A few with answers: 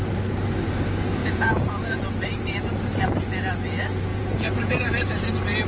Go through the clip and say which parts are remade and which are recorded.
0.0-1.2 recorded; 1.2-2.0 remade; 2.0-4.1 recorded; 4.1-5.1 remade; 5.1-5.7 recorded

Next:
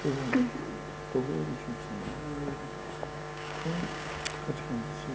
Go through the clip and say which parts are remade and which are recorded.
0.0-2.0 recorded; 2.0-4.1 remade; 4.1-5.1 recorded

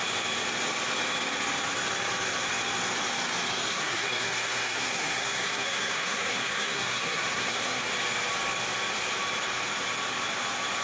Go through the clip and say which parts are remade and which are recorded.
0.0-3.7 recorded; 3.7-7.9 remade; 7.9-10.8 recorded

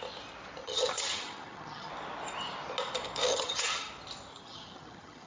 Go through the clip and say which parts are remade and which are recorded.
0.0-0.6 recorded; 0.6-1.9 remade; 1.9-3.3 recorded; 3.3-3.9 remade; 3.9-4.3 recorded; 4.3-5.3 remade